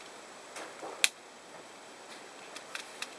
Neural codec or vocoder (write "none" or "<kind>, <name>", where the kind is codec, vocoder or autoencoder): none